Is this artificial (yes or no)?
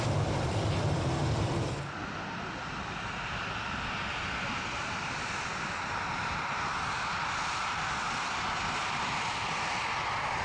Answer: yes